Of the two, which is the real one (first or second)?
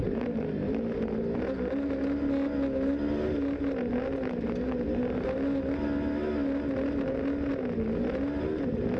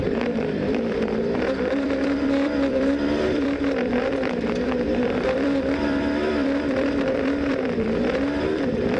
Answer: first